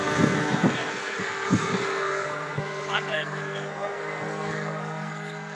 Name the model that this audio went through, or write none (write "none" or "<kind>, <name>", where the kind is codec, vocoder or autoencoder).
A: codec, SNAC